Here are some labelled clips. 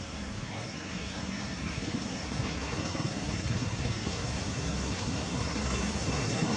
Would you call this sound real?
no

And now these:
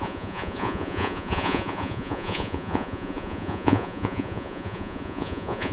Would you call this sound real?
no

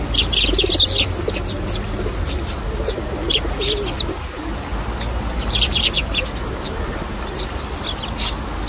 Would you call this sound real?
yes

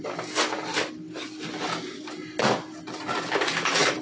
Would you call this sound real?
yes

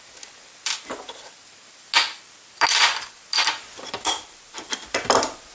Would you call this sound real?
yes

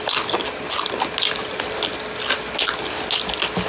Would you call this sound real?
yes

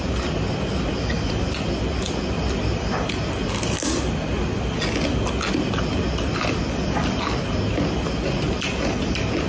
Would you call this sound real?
yes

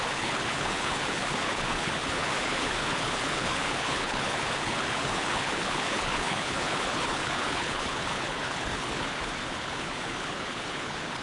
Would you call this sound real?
no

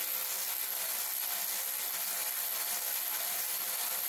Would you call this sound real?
yes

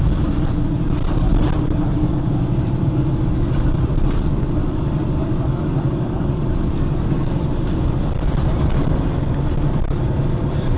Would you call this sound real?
no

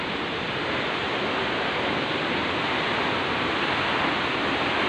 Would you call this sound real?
yes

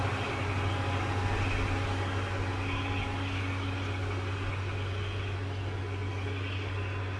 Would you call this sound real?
yes